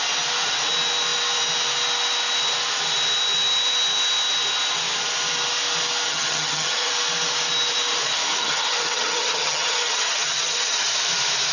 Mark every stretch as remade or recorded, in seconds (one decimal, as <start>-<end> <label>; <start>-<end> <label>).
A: 0.0-6.1 recorded; 6.1-6.9 remade; 6.9-8.3 recorded; 8.3-10.9 remade; 10.9-11.5 recorded